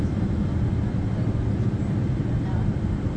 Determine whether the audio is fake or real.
fake